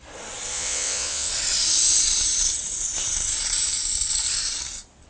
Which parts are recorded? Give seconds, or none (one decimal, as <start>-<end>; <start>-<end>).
0.0-0.5; 1.3-5.1